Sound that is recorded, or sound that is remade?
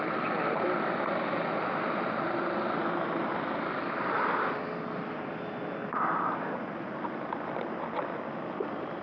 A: recorded